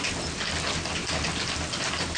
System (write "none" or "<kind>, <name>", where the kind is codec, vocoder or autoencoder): none